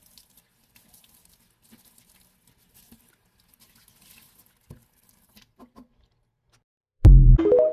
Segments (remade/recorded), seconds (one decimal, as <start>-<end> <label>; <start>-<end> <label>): 0.0-6.7 recorded; 6.7-7.3 remade; 7.3-7.7 recorded